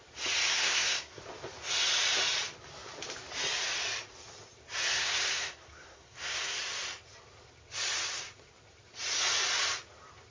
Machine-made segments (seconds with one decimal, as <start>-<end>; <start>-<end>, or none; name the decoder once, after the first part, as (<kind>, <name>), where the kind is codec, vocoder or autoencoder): 0.5-1.2 (codec, SNAC); 4.9-6.6